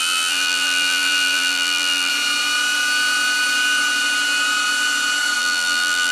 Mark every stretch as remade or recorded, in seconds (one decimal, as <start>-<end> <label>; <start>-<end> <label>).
0.0-2.1 remade; 2.1-5.4 recorded; 5.4-6.1 remade